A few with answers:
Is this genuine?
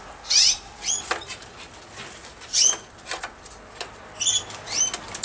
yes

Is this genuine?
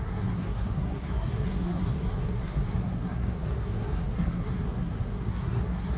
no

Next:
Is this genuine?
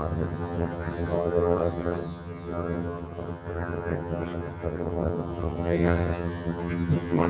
no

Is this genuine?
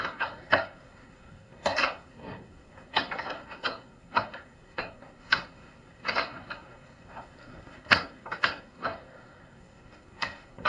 no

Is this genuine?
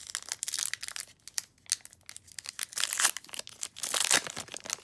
yes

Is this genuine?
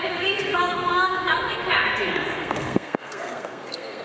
no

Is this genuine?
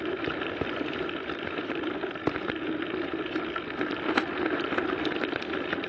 yes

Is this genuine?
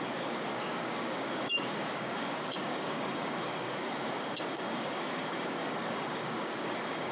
no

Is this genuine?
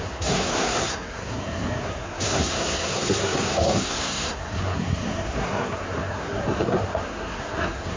no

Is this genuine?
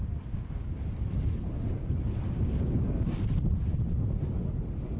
yes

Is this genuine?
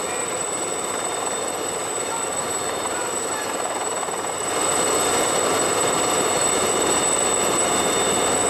no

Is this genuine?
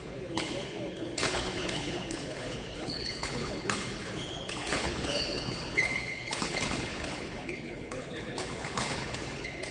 no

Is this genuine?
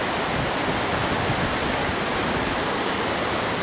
yes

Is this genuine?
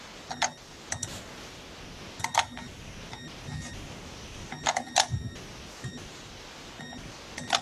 yes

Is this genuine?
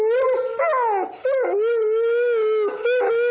yes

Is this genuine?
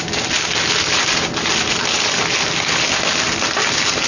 yes